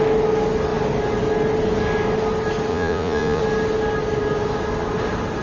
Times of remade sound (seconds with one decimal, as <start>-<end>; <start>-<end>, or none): 2.7-3.4